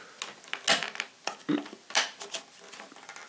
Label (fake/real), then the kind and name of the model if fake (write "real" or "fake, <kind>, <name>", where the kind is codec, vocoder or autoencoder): real